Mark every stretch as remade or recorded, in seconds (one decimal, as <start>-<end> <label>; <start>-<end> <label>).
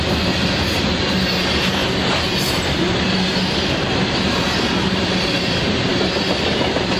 0.0-7.0 recorded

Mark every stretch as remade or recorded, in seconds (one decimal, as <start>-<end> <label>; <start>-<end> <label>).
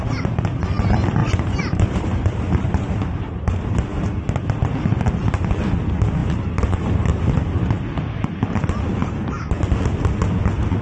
0.0-1.2 recorded; 1.2-4.2 remade; 4.2-6.2 recorded; 6.2-7.0 remade; 7.0-10.8 recorded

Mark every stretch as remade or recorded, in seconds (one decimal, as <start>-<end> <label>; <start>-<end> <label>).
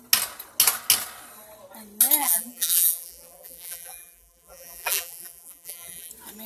0.0-2.2 recorded; 2.2-6.1 remade; 6.1-6.5 recorded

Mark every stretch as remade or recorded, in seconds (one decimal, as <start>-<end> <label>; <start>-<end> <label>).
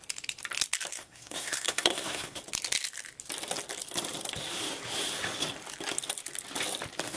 0.0-0.9 recorded; 0.9-2.4 remade; 2.4-7.2 recorded